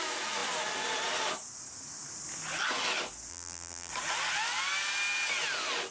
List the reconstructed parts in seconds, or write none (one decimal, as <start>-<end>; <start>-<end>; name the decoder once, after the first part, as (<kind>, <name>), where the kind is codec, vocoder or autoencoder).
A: 3.3-3.9 (vocoder, BigVGAN v2)